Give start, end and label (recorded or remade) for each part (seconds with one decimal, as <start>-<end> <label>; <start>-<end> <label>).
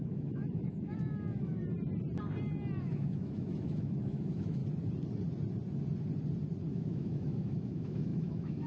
0.0-1.6 remade; 1.6-2.8 recorded; 2.8-4.6 remade; 4.6-6.7 recorded; 6.7-8.7 remade